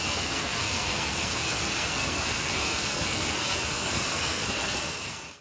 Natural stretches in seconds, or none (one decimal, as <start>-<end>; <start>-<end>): none